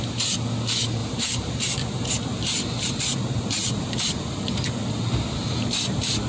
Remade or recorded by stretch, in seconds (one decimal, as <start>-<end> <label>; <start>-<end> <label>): 0.0-1.0 recorded; 1.0-3.0 remade; 3.0-3.6 recorded; 3.6-4.1 remade; 4.1-6.3 recorded